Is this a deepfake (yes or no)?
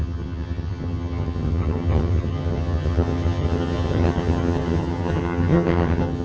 yes